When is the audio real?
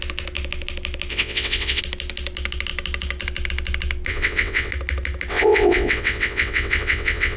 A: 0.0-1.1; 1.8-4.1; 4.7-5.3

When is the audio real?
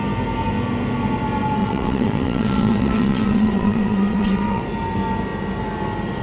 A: 0.0-1.6; 4.6-6.2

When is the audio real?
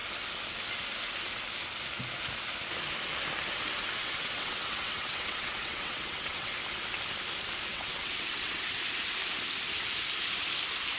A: 0.0-4.0; 6.5-7.7; 8.8-11.0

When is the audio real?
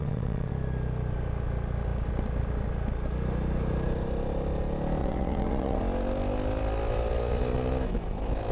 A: 0.5-5.0; 5.8-8.5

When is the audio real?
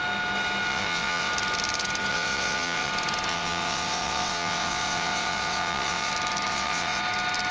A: 0.0-0.7; 1.3-2.1; 2.9-3.3; 6.1-6.5; 7.0-7.5